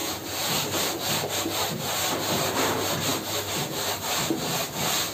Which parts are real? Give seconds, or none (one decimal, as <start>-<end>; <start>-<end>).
1.1-3.1; 4.6-5.1